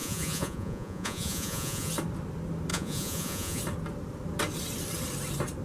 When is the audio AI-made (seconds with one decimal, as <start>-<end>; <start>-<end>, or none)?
0.0-1.9; 2.7-3.6